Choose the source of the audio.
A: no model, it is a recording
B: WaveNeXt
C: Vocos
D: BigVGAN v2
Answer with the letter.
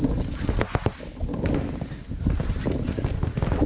A